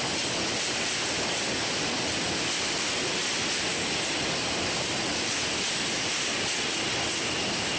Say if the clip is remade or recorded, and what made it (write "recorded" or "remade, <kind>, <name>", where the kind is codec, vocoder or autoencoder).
recorded